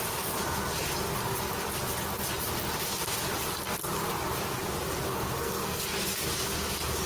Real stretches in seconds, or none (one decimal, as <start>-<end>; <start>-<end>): 0.0-5.1; 5.8-7.1

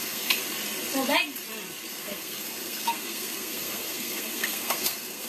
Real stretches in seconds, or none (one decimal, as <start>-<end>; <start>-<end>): 0.4-1.9

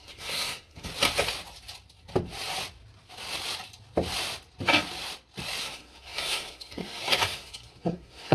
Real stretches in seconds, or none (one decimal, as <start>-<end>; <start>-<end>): 0.9-5.6

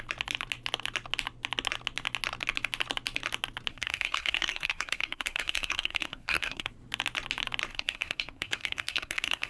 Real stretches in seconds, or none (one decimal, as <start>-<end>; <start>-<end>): 0.0-3.7; 6.7-7.7

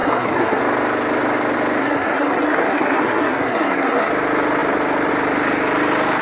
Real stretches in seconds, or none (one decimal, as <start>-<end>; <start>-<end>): 0.6-1.8; 4.1-6.2

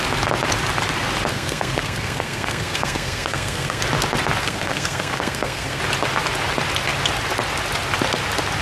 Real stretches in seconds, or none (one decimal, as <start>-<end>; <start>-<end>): 0.0-1.3; 3.8-4.4; 5.8-8.6

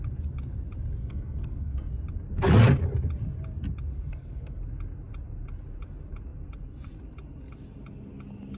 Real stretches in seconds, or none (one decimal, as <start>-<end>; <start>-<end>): 0.0-1.0; 1.9-4.1; 4.6-8.6